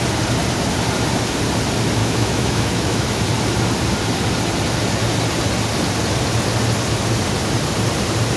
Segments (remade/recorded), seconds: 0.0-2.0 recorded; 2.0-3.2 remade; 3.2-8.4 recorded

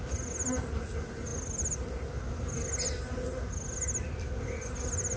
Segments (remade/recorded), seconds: 0.0-5.2 recorded

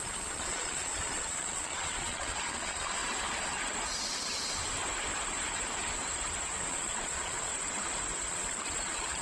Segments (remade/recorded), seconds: 0.0-3.0 remade; 3.0-6.7 recorded; 6.7-7.5 remade; 7.5-8.3 recorded; 8.3-9.2 remade

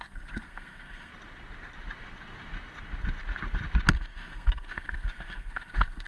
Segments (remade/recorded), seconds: 0.0-1.1 remade; 1.1-3.9 recorded; 3.9-6.1 remade

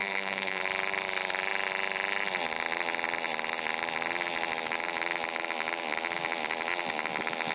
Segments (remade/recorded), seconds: 0.0-0.6 remade; 0.6-7.5 recorded

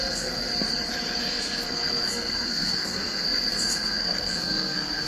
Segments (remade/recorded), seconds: 0.0-0.5 remade; 0.5-1.2 recorded; 1.2-5.1 remade

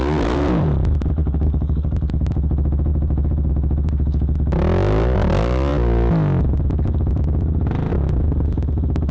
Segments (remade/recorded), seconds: 0.0-1.2 recorded; 1.2-2.3 remade; 2.3-9.1 recorded

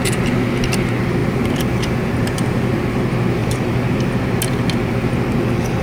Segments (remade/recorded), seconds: 0.0-1.2 recorded; 1.2-2.9 remade; 2.9-3.4 recorded; 3.4-4.1 remade; 4.1-5.8 recorded